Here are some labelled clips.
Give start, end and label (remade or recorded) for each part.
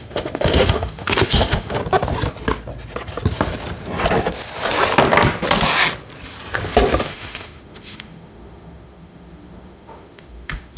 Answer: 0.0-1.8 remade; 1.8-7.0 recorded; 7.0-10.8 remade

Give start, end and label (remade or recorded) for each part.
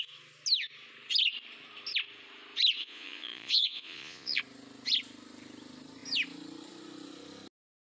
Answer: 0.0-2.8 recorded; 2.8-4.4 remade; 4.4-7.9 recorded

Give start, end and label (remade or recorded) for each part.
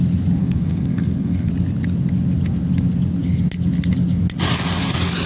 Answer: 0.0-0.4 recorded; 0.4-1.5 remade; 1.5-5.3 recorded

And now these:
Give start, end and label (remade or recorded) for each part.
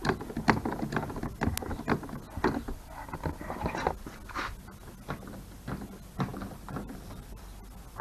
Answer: 0.0-6.3 recorded; 6.3-7.4 remade; 7.4-8.0 recorded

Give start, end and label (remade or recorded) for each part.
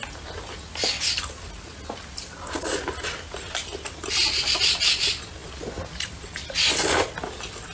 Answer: 0.0-7.7 recorded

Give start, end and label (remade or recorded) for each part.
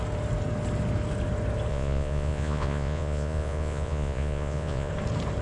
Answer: 0.0-1.7 recorded; 1.7-4.9 remade; 4.9-5.4 recorded